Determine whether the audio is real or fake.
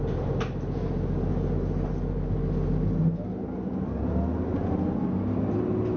real